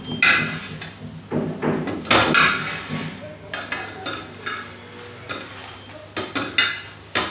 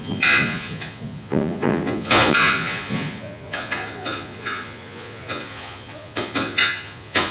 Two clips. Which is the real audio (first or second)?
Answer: first